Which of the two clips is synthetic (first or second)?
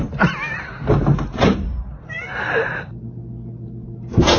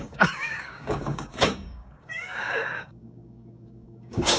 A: second